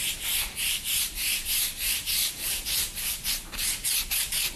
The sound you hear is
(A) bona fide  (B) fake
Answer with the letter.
B